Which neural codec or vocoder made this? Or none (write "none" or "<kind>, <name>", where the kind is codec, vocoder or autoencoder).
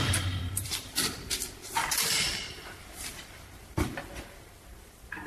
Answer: vocoder, BigVGAN v2